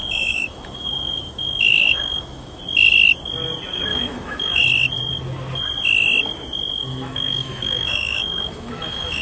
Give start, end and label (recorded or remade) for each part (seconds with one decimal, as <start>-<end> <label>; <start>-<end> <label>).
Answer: 0.0-2.6 remade; 2.6-3.9 recorded; 3.9-4.6 remade; 4.6-6.8 recorded; 6.8-9.2 remade